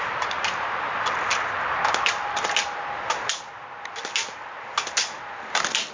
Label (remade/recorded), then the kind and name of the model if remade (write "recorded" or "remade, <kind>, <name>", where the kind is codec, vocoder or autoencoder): recorded